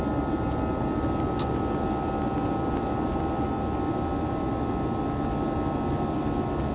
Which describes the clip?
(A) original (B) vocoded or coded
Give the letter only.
A